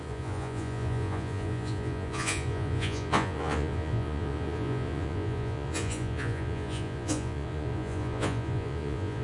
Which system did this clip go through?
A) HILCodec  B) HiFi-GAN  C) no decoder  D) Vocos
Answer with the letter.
D